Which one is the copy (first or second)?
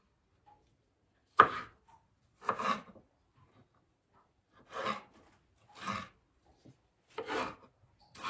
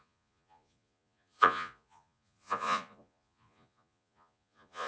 second